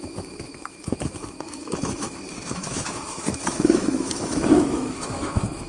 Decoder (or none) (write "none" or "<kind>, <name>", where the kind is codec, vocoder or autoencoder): autoencoder, DAC-VAE